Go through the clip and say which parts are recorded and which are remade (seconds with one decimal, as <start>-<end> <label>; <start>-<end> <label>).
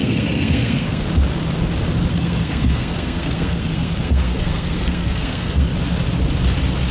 0.0-1.0 remade; 1.0-2.1 recorded; 2.1-5.7 remade; 5.7-6.9 recorded